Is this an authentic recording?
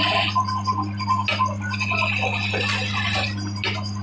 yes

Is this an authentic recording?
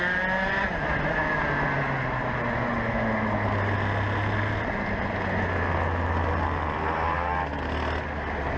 yes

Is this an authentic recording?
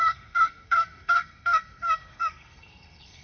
no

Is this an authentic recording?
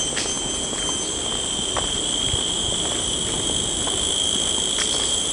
yes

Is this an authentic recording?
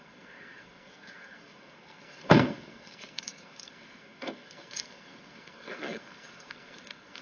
no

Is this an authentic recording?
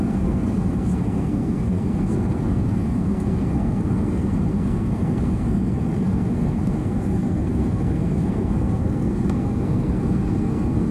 no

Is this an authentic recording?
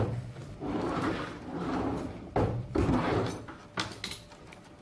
yes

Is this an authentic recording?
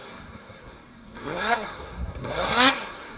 no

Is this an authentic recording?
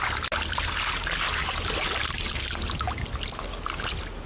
yes